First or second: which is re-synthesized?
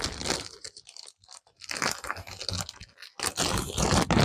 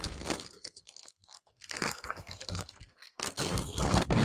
second